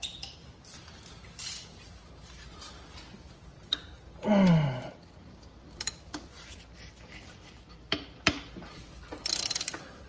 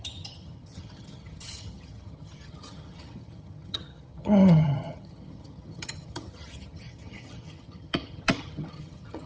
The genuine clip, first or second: first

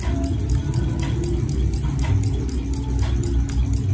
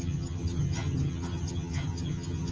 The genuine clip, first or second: first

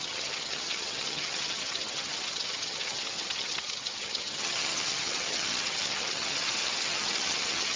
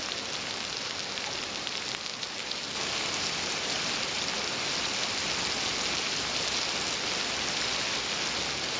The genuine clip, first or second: second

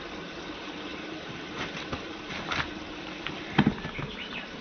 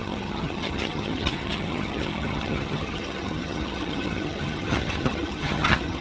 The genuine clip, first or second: first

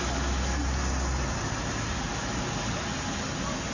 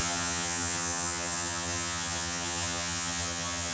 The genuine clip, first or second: first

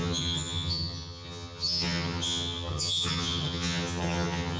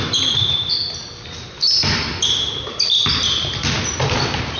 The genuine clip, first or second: second